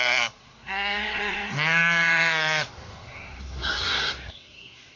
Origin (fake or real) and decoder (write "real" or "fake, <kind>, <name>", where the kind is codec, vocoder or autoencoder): fake, codec, SNAC